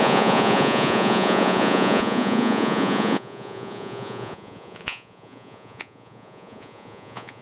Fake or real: fake